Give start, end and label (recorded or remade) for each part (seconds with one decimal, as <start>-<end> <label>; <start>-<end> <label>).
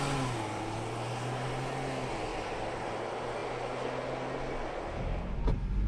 0.0-2.3 recorded; 2.3-2.9 remade; 2.9-5.9 recorded